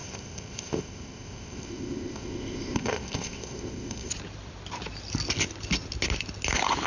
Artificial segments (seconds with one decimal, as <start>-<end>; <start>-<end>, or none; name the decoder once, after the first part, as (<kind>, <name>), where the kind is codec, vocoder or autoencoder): 0.0-4.1 (codec, ZipCodec)